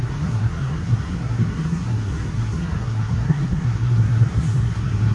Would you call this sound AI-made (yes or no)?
yes